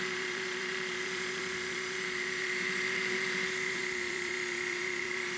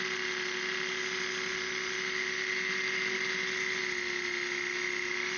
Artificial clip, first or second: first